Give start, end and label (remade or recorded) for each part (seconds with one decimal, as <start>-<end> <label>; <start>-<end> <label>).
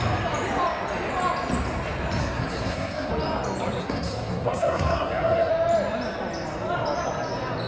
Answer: 0.0-2.2 recorded; 2.2-3.1 remade; 3.1-3.8 recorded; 3.8-5.5 remade; 5.5-7.7 recorded